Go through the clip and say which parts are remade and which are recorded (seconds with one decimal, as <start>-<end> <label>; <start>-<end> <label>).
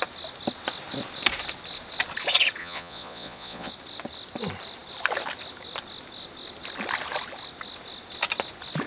0.0-2.6 recorded; 2.6-3.7 remade; 3.7-8.9 recorded